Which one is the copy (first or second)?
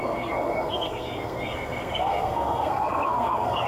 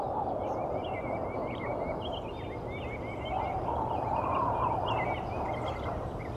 first